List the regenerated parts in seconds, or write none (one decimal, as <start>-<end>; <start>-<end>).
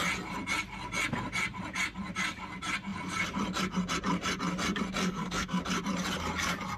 5.0-5.6